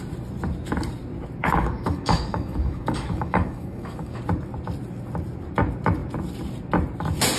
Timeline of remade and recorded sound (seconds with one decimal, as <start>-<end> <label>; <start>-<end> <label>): 0.0-1.4 recorded; 1.4-4.2 remade; 4.2-7.4 recorded